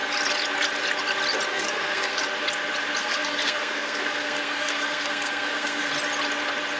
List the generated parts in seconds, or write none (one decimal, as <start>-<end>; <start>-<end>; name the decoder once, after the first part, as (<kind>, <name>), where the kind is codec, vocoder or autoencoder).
1.5-2.2 (codec, SNAC); 3.0-5.9